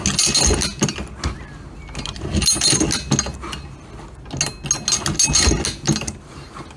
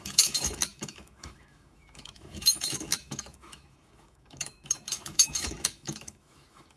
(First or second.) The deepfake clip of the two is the second